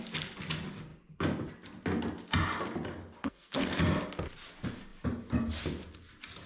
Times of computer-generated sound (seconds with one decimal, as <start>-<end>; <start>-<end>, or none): 3.2-3.8